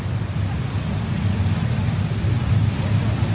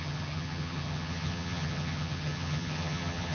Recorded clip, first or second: first